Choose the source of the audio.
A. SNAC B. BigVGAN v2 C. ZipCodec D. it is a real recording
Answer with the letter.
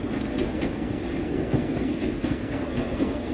A